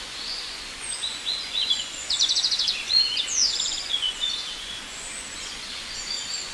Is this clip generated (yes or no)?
yes